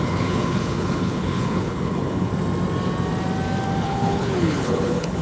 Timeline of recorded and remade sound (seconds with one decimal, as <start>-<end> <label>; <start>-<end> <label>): 0.0-2.3 remade; 2.3-3.8 recorded; 3.8-5.2 remade